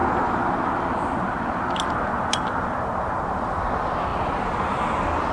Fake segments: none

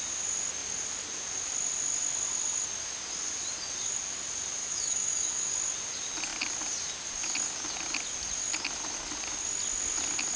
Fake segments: 4.6-5.5 (autoencoder, DAC-VAE)

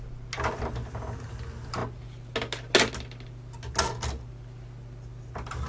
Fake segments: none

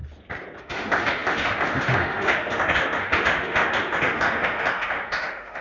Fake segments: 0.6-5.6 (autoencoder, DAC-VAE)

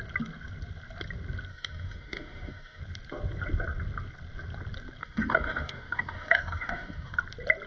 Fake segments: 1.5-2.8 (autoencoder, DAC-VAE); 5.0-7.2